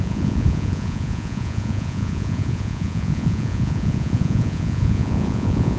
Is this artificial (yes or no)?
yes